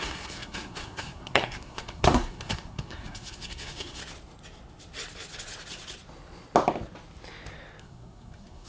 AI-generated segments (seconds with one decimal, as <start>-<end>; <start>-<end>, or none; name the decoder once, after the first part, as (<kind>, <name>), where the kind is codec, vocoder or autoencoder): 0.0-4.0 (codec, SNAC); 7.8-8.7